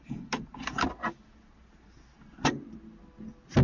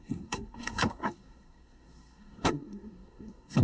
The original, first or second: first